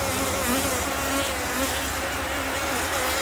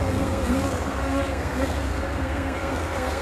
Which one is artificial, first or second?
second